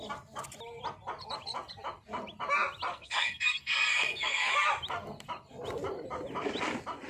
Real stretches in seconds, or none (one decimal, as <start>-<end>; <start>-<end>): 0.0-2.9; 4.5-7.1

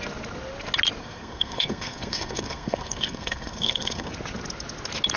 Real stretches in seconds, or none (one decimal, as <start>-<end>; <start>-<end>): 0.0-1.0; 4.1-5.2

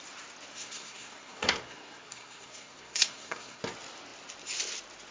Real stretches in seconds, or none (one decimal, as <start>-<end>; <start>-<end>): 0.0-0.5; 3.6-5.1